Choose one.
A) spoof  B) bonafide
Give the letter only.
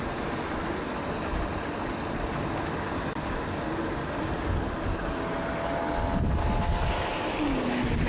B